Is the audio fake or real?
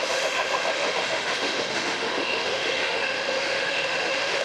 fake